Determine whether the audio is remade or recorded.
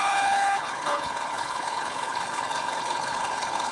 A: remade